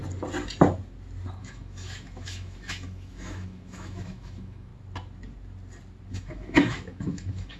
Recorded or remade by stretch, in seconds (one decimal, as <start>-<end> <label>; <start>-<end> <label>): 0.0-1.4 recorded; 1.4-4.7 remade; 4.7-6.1 recorded; 6.1-7.6 remade